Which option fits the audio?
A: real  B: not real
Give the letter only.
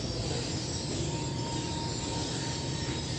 A